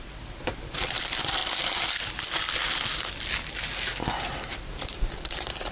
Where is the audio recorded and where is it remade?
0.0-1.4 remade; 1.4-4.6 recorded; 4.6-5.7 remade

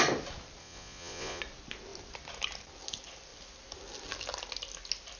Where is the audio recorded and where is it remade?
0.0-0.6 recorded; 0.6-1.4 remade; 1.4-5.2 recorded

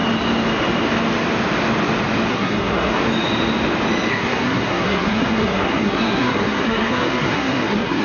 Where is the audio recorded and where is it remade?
0.0-2.3 recorded; 2.3-3.0 remade; 3.0-4.1 recorded; 4.1-8.0 remade